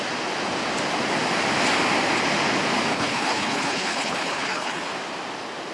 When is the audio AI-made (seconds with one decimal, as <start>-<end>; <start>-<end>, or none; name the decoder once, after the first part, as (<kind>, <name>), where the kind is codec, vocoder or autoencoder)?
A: 2.9-4.8 (codec, HILCodec)